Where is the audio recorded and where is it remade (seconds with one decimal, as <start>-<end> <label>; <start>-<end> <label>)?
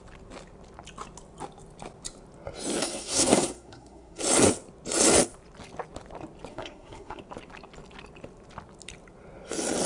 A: 0.0-2.8 recorded; 2.8-4.2 remade; 4.2-6.5 recorded; 6.5-7.2 remade; 7.2-9.9 recorded